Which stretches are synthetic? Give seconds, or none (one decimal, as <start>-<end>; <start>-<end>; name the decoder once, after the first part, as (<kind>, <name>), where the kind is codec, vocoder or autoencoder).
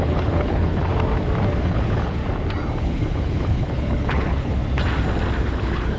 0.0-0.9 (codec, HILCodec); 1.6-2.2; 2.8-4.6; 5.4-6.0